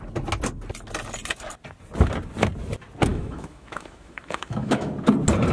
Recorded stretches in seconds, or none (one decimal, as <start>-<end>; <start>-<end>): 0.0-3.1; 4.9-5.5